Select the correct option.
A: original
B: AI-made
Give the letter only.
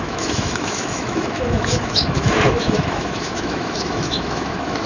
B